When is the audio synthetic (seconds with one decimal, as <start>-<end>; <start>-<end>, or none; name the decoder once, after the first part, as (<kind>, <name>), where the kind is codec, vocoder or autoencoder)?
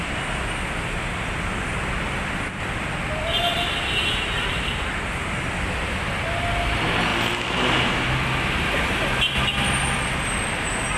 none